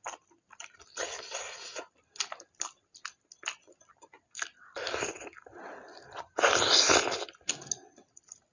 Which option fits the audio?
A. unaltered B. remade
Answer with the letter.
A